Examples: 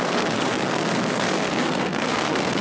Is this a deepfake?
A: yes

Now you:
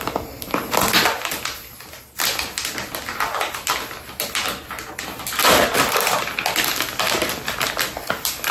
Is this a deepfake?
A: no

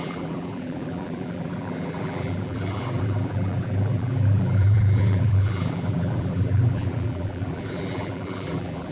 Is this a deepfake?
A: yes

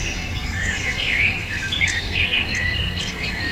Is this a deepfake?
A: yes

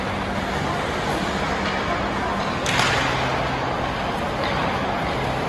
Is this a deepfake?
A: no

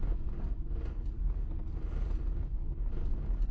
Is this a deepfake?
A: no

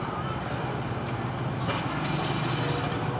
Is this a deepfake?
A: no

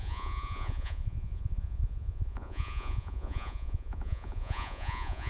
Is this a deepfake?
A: yes